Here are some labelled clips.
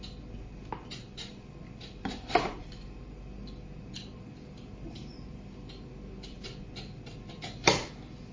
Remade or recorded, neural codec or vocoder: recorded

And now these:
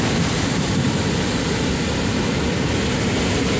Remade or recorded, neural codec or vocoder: recorded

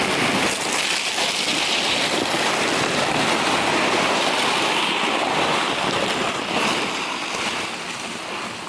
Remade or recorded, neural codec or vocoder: recorded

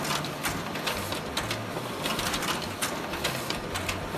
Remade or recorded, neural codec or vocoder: recorded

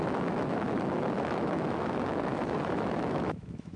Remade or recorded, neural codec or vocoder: remade, autoencoder, DAC-VAE